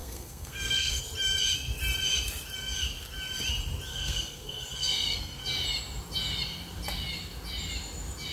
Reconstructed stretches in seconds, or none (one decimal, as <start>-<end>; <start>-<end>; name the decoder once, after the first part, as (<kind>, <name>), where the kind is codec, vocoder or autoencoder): 0.0-1.0 (codec, SNAC); 3.9-5.4